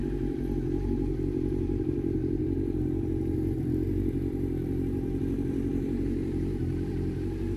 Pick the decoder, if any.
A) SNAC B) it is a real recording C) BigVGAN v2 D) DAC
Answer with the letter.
C